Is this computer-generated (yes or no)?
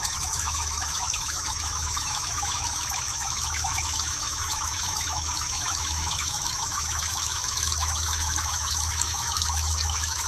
yes